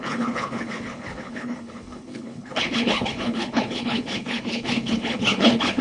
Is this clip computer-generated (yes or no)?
yes